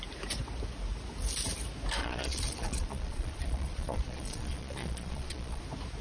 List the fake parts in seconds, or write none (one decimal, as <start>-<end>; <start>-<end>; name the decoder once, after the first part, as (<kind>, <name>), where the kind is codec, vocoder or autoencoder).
2.0-5.6 (vocoder, Vocos)